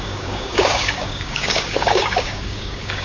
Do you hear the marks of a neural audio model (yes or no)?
yes